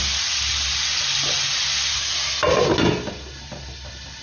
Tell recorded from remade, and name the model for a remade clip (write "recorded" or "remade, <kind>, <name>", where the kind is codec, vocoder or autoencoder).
recorded